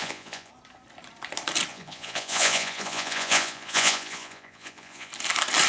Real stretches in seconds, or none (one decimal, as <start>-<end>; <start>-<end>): 0.5-1.7; 5.1-5.7